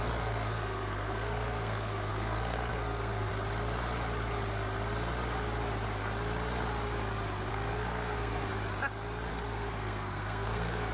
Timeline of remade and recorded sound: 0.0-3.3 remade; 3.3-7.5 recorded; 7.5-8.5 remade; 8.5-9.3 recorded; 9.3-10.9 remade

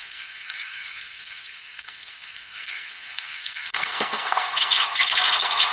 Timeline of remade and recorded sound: 0.0-5.7 remade

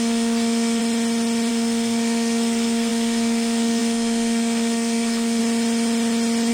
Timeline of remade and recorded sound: 0.0-0.8 remade; 0.8-1.5 recorded; 1.5-5.4 remade; 5.4-6.5 recorded

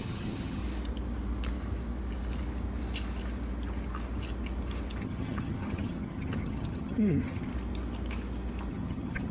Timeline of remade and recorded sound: 0.0-0.6 remade; 0.6-5.0 recorded; 5.0-7.5 remade; 7.5-8.7 recorded; 8.7-9.3 remade

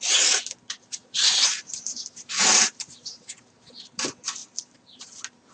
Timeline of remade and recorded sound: 0.0-1.0 recorded; 1.0-3.7 remade; 3.7-4.4 recorded; 4.4-5.0 remade; 5.0-5.5 recorded

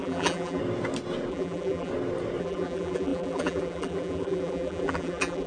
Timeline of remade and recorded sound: 0.0-0.6 remade; 0.6-1.3 recorded; 1.3-1.9 remade; 1.9-2.4 recorded; 2.4-5.5 remade

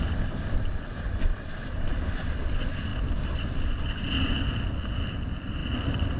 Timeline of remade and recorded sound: 0.0-2.9 recorded; 2.9-3.5 remade; 3.5-5.6 recorded; 5.6-6.2 remade